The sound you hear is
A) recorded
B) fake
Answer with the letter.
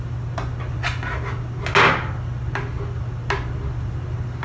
A